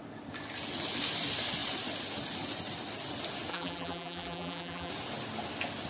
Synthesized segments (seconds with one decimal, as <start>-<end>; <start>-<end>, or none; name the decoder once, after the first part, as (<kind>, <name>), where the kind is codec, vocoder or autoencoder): 3.5-4.9 (vocoder, BigVGAN v2)